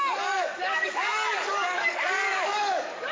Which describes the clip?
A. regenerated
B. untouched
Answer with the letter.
A